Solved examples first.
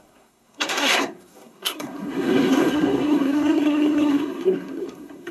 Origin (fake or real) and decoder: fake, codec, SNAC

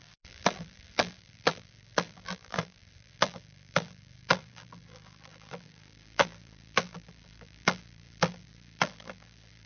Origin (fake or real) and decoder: fake, vocoder, BigVGAN v2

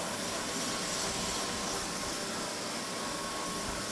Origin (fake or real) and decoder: real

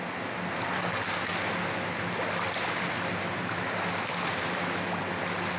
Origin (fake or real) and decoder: real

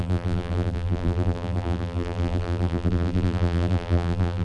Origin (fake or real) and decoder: fake, vocoder, BigVGAN v2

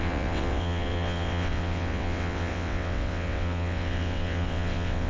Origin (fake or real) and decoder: fake, vocoder, WaveNeXt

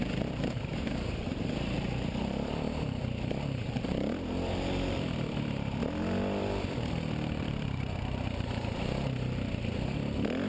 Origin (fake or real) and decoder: fake, vocoder, BigVGAN v2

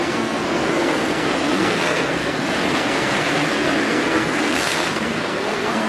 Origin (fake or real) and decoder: fake, codec, SNAC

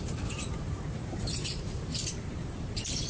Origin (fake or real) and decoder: fake, vocoder, BigVGAN v2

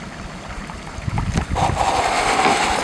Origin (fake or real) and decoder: real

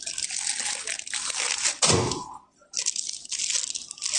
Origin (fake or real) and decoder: real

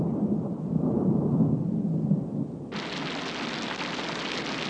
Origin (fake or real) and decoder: real